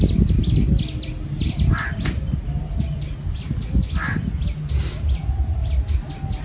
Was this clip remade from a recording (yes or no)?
no